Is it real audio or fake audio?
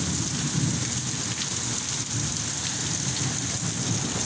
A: real